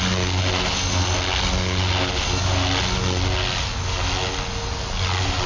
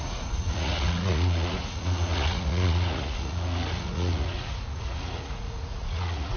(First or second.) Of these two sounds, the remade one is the second